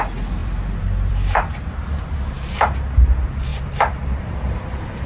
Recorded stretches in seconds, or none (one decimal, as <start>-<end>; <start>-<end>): 0.0-0.4; 2.1-3.5